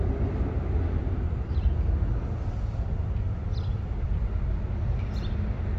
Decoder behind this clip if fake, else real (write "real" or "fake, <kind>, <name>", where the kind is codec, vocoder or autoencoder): real